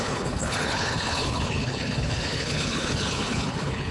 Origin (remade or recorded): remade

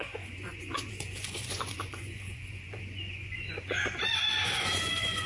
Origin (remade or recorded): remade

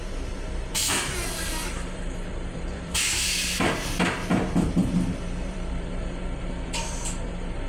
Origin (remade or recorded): remade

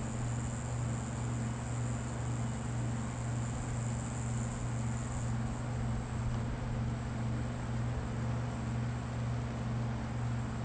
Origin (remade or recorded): recorded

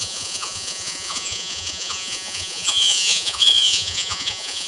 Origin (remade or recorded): remade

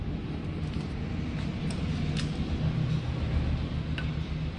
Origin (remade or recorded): recorded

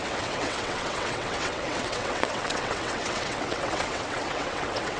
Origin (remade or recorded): remade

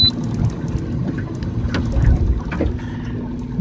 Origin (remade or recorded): recorded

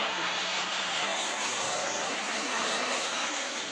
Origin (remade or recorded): remade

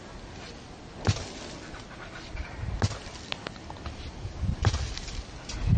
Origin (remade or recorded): recorded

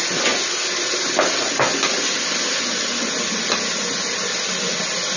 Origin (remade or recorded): recorded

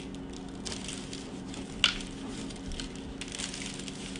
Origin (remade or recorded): recorded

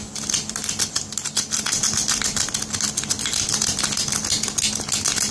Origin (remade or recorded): recorded